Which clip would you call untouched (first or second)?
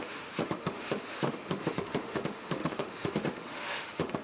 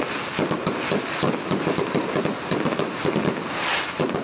second